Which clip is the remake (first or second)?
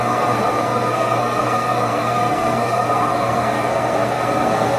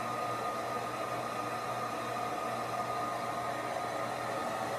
first